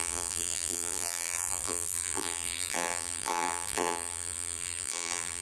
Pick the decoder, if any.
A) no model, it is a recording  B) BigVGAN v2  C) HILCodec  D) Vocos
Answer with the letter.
B